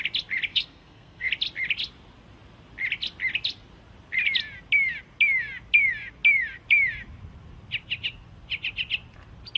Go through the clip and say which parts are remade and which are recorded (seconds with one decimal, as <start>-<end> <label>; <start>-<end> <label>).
0.0-0.5 recorded; 0.5-1.3 remade; 1.3-9.6 recorded

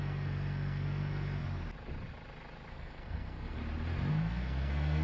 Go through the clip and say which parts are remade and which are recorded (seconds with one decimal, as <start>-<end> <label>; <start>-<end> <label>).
0.0-1.4 remade; 1.4-2.7 recorded; 2.7-3.6 remade; 3.6-4.1 recorded; 4.1-5.0 remade

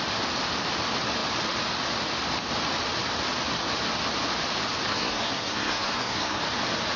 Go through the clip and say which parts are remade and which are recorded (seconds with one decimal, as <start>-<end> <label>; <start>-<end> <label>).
0.0-4.9 recorded; 4.9-6.4 remade; 6.4-7.0 recorded

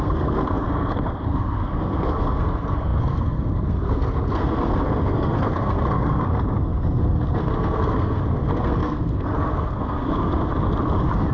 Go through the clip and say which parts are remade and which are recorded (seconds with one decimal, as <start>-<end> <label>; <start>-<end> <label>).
0.0-10.5 remade; 10.5-11.3 recorded

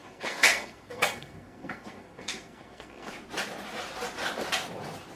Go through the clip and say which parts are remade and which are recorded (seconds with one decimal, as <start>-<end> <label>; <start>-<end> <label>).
0.0-3.1 remade; 3.1-5.2 recorded

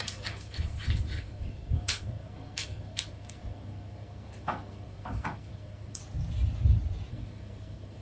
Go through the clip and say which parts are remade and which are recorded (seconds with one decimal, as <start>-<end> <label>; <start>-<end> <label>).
0.0-6.0 remade; 6.0-7.1 recorded; 7.1-8.0 remade